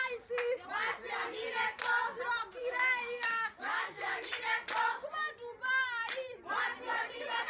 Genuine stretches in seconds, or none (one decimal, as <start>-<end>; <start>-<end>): 0.0-2.6; 4.3-7.5